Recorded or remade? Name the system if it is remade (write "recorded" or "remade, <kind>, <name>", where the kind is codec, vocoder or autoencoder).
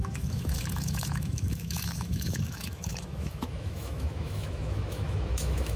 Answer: remade, autoencoder, DAC-VAE